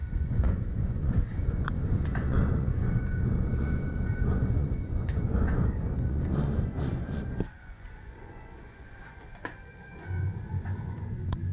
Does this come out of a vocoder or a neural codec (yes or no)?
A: yes